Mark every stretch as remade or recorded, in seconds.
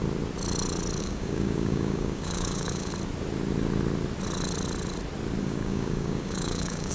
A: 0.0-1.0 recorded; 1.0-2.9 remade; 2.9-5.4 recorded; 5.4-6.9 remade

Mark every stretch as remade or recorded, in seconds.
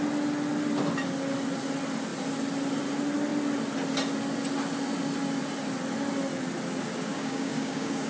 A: 0.0-7.1 recorded; 7.1-8.1 remade